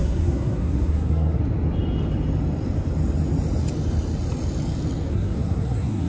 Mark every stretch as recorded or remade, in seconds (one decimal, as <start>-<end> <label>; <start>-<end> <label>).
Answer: 0.0-1.4 remade; 1.4-5.1 recorded; 5.1-6.1 remade